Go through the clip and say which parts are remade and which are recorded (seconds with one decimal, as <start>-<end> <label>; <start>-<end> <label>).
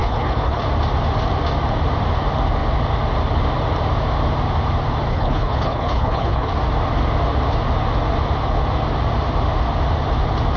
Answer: 0.0-0.6 remade; 0.6-5.1 recorded; 5.1-6.5 remade; 6.5-10.6 recorded